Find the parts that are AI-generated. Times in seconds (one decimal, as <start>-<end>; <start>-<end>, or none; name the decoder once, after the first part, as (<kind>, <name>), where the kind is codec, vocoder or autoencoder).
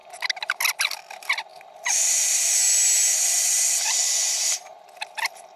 none